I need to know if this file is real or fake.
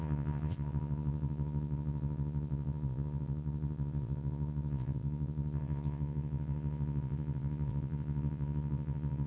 fake